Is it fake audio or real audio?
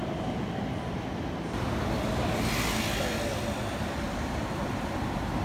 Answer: real